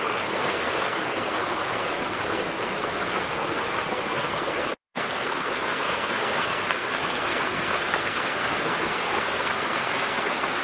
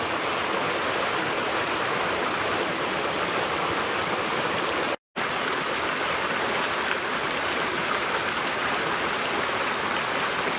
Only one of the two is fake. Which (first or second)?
first